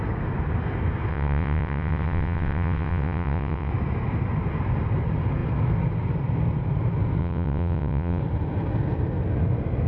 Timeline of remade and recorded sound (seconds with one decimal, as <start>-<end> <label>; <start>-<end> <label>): 0.0-1.1 recorded; 1.1-3.7 remade; 3.7-7.2 recorded; 7.2-8.2 remade; 8.2-9.9 recorded